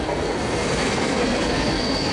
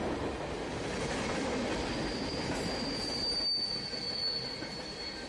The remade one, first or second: first